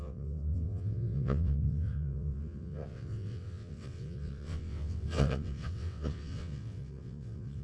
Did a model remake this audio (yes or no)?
yes